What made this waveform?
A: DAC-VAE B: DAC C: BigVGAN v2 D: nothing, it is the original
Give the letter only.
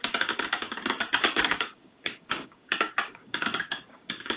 B